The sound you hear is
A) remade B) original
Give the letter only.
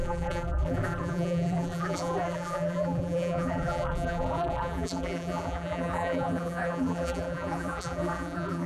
A